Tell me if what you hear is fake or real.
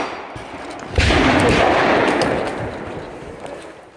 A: real